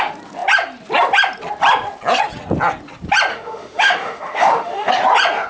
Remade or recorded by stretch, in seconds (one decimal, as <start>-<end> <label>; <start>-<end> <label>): 0.0-3.3 recorded; 3.3-4.9 remade; 4.9-5.5 recorded